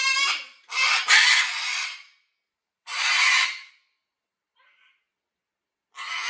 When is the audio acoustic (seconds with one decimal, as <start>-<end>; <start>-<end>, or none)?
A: 0.0-2.9; 3.7-6.3